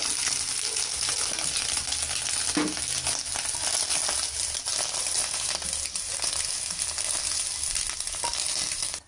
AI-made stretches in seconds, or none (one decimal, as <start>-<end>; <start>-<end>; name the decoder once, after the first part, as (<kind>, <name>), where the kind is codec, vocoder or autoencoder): none